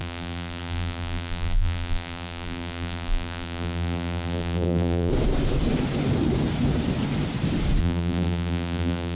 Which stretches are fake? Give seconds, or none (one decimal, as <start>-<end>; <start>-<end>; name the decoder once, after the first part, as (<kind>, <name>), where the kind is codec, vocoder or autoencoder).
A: 0.0-5.1 (vocoder, BigVGAN v2); 7.8-9.1